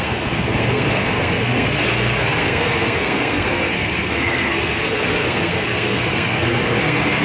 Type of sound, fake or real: fake